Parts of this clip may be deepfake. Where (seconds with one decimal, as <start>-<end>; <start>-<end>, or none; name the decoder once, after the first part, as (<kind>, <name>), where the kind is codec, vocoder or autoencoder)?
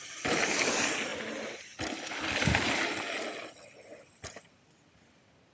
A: 1.1-2.8 (vocoder, BigVGAN v2)